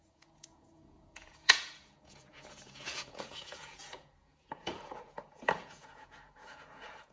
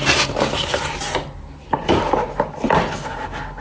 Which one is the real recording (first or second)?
second